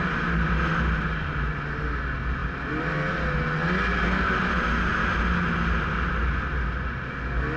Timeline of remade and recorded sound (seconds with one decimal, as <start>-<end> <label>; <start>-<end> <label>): 0.0-7.6 recorded